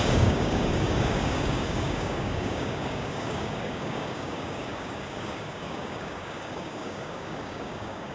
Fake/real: fake